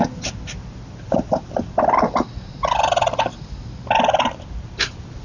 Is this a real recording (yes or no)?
yes